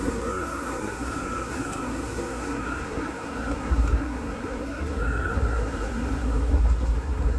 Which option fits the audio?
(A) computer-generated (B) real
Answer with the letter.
A